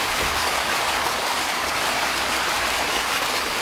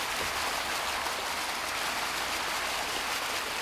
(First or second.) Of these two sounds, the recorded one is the second